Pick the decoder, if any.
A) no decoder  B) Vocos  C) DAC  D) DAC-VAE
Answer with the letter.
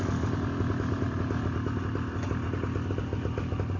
A